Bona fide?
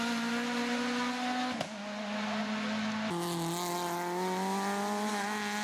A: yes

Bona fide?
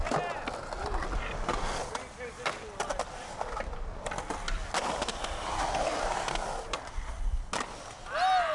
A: yes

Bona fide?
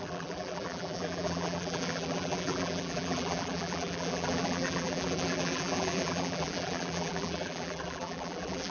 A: no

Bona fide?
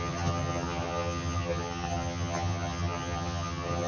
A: no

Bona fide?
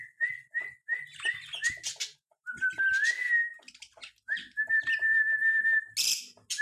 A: yes